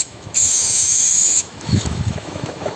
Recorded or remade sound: remade